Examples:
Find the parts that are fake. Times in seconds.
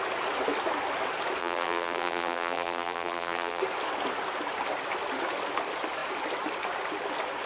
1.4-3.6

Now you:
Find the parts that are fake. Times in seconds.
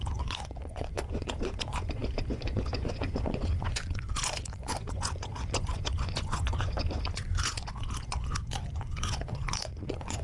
0.0-10.2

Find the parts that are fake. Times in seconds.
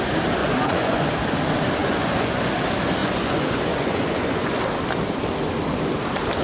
0.4-1.1; 1.8-2.5; 3.0-4.6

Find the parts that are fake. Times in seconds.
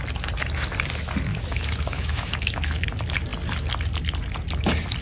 1.3-2.8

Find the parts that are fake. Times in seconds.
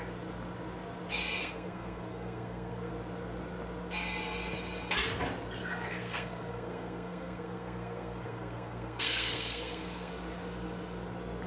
1.4-2.9; 5.6-10.1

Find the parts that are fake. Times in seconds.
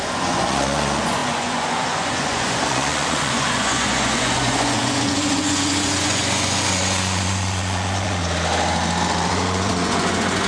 0.0-8.2; 9.3-10.5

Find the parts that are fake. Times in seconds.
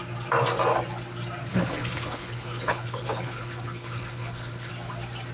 1.5-4.7